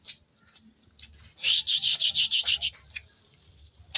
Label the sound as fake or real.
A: real